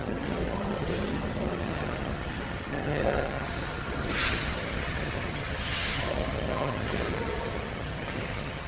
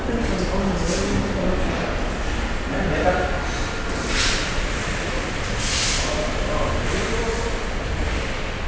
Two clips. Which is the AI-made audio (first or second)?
first